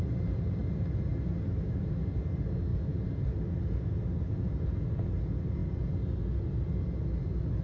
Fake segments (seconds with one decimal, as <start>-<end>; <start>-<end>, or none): none